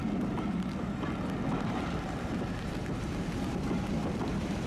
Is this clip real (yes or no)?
no